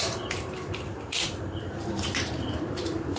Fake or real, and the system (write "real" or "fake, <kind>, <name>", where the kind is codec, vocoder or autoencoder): fake, vocoder, BigVGAN v2